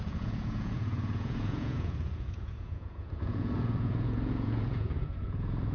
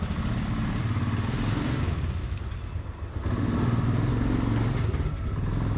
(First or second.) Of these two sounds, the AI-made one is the first